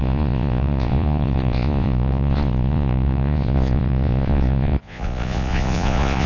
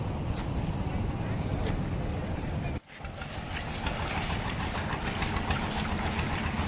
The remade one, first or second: first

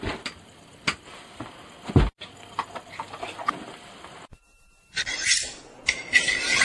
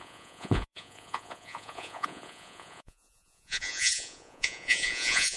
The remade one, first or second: second